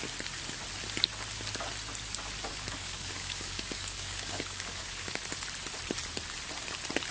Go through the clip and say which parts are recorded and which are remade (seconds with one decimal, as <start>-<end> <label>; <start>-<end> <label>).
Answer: 0.0-2.5 recorded; 2.5-5.2 remade; 5.2-7.1 recorded